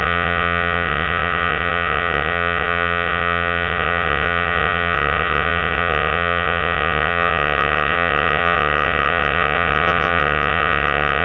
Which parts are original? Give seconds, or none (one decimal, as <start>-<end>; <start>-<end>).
none